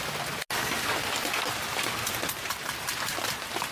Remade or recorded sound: recorded